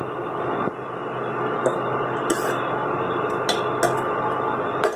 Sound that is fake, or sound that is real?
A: real